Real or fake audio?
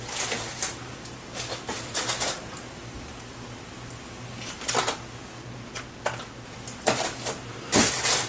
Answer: real